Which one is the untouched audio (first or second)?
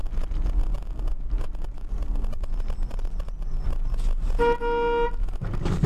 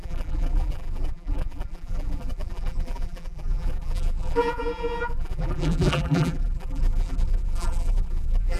first